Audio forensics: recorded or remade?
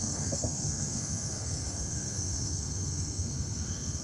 remade